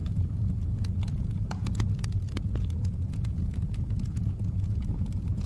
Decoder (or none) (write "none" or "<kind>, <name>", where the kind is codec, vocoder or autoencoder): vocoder, Vocos